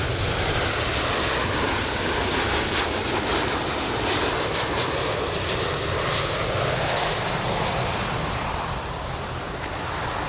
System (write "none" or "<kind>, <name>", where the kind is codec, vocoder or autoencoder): none